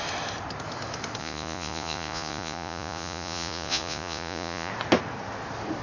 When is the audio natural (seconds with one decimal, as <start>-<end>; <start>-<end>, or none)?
0.0-1.2; 4.7-5.8